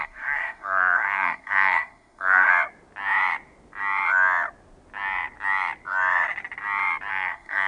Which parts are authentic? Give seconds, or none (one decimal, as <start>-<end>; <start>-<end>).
2.5-7.1